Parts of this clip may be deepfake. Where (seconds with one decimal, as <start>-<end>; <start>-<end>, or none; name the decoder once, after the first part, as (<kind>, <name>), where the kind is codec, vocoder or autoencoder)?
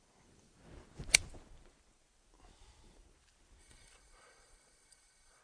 3.6-5.4 (vocoder, Vocos)